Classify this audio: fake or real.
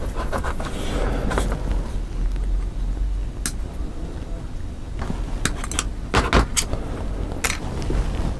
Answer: real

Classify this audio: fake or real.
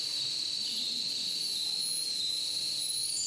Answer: real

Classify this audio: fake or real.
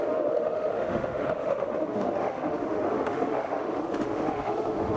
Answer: fake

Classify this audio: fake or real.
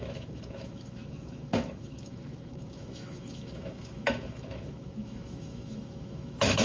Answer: fake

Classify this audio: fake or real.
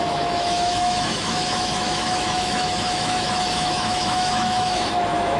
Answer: fake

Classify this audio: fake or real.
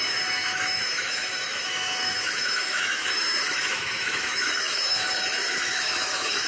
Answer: fake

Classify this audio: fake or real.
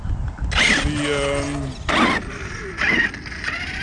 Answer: real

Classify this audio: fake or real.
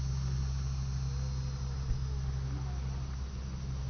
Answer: real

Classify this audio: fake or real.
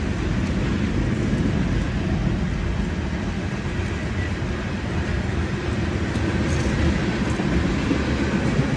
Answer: real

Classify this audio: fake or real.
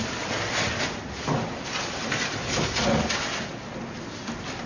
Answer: real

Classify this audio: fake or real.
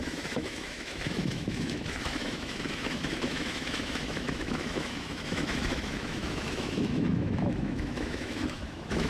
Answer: fake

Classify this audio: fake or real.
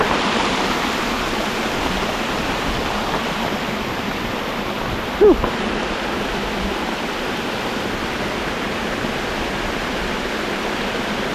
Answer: real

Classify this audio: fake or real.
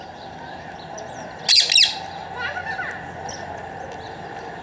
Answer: real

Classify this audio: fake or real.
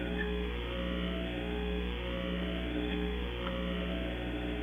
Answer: fake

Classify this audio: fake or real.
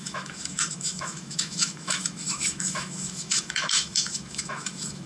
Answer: fake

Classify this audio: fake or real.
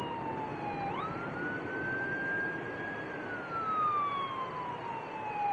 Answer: real